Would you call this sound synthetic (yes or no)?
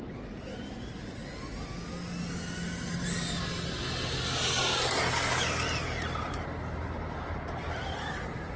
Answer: no